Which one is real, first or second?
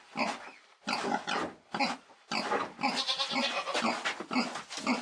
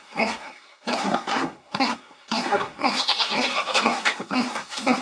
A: first